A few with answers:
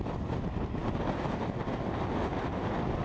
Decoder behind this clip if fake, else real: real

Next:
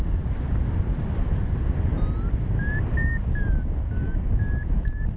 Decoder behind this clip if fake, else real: real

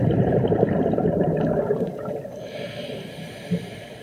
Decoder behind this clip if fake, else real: fake, vocoder, BigVGAN v2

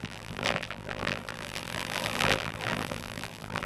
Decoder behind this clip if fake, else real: fake, vocoder, BigVGAN v2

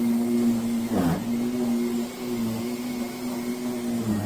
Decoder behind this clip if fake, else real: real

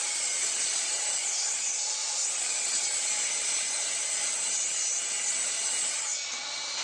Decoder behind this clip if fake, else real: real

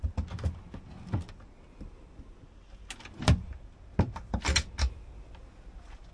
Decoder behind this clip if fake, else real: real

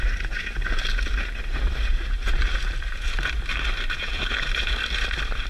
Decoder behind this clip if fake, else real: fake, vocoder, BigVGAN v2